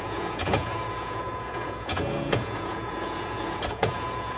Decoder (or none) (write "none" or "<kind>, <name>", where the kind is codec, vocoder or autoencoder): vocoder, Vocos